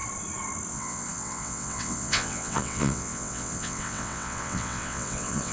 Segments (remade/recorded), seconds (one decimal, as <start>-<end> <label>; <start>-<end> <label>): 0.0-0.7 recorded; 0.7-5.5 remade